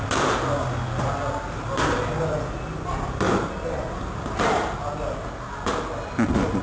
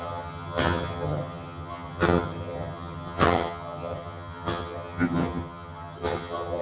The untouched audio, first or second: first